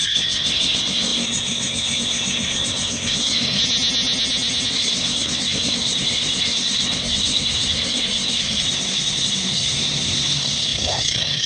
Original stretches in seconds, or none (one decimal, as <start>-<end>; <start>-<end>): 3.6-4.7

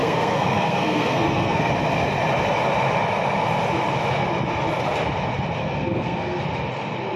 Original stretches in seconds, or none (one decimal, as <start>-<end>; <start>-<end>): 1.7-5.6; 6.4-7.2

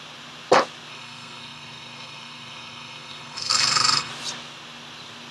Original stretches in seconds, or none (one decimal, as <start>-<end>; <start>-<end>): 0.0-0.9; 4.1-5.3

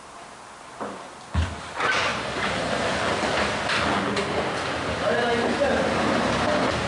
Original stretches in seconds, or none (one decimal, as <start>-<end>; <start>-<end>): 0.0-6.9

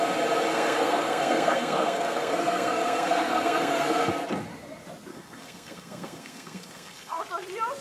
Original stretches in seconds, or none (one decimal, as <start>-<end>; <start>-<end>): 0.0-0.5; 4.1-5.1; 7.2-7.8

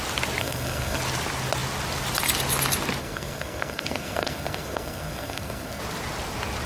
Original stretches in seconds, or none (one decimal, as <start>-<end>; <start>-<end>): 0.0-0.4; 1.0-3.0; 5.8-6.7

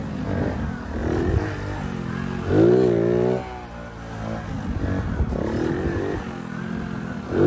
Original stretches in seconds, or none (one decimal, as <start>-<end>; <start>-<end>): 0.0-7.5

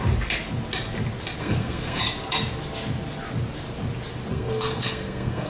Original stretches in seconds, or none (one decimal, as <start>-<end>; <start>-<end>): 0.0-1.4; 2.0-4.3